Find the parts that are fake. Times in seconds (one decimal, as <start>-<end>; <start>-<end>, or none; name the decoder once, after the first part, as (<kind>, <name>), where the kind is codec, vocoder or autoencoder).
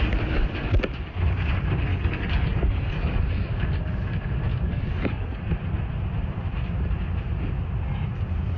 1.9-3.2 (codec, DAC); 4.5-5.4